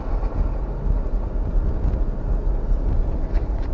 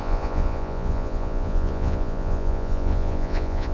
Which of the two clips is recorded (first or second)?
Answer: first